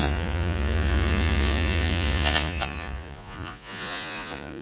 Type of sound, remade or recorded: remade